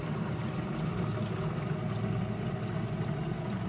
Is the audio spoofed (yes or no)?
no